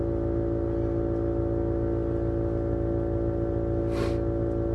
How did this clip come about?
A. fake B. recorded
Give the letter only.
B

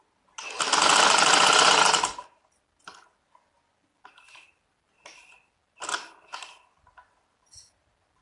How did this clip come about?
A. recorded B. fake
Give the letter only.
A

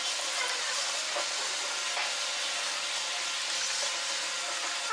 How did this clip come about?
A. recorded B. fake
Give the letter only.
A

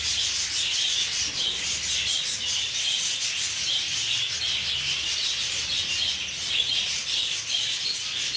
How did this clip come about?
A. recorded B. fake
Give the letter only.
A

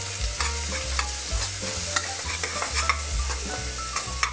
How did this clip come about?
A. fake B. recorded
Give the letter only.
B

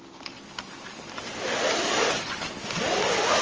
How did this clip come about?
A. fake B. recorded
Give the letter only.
B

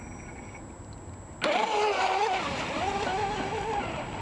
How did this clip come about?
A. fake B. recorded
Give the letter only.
B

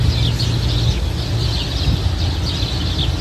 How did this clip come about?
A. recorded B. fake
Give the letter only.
A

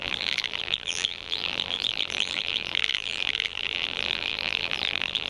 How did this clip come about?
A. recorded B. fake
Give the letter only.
B